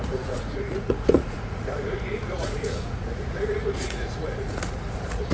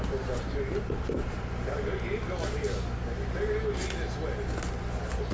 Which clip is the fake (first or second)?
first